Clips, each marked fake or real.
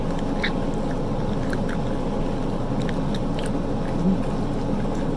real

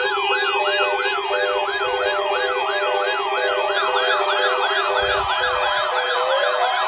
real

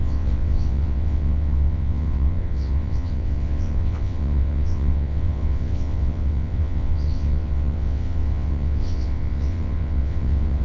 fake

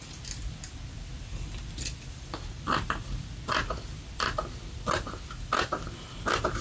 real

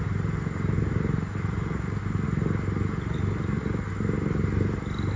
real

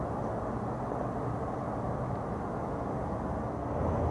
real